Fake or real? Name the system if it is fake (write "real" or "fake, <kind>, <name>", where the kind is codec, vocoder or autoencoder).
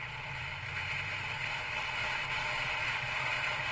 real